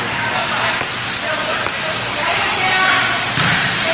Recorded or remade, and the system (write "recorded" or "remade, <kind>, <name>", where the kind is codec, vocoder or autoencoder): recorded